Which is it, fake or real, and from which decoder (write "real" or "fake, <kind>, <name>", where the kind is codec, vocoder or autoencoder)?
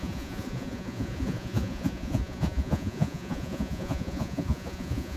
fake, vocoder, Vocos